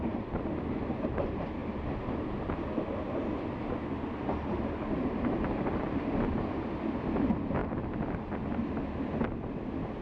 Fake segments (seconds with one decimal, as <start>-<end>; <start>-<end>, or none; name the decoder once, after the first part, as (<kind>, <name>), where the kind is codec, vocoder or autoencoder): none